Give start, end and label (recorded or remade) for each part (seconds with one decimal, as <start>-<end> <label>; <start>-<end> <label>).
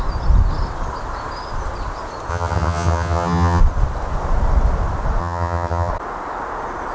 0.0-2.3 recorded; 2.3-3.6 remade; 3.6-5.2 recorded; 5.2-5.9 remade; 5.9-6.9 recorded